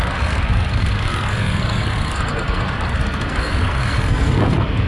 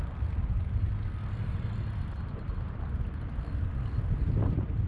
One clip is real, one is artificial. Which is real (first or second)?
second